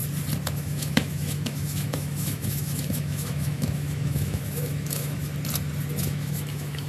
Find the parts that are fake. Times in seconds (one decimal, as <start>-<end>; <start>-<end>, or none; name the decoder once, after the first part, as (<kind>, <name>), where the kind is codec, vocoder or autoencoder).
0.5-5.3 (autoencoder, DAC-VAE); 6.0-6.9